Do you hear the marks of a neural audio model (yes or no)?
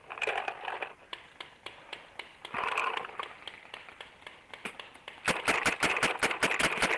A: no